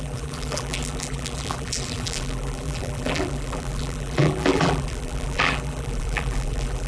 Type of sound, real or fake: fake